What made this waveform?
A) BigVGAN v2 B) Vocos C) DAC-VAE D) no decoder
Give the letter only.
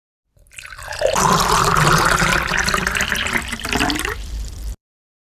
A